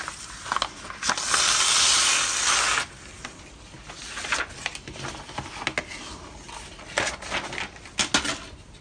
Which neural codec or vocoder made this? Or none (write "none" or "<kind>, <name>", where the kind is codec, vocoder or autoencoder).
none